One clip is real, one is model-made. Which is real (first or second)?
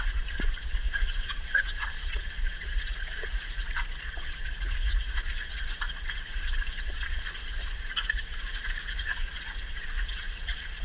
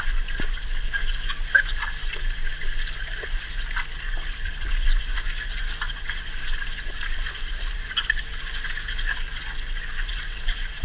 second